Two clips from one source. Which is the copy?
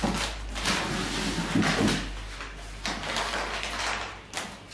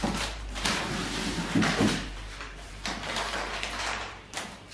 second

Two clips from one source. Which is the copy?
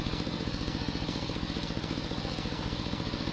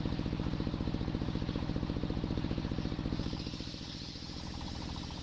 first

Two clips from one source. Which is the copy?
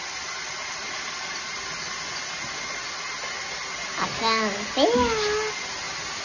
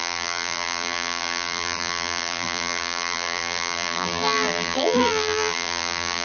second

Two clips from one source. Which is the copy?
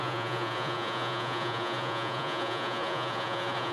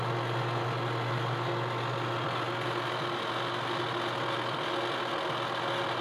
first